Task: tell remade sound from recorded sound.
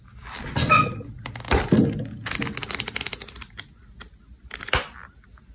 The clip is recorded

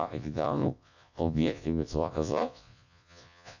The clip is remade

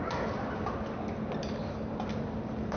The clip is recorded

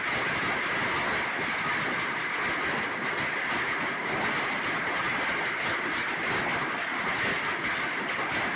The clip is recorded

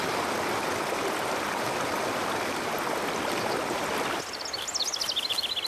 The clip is recorded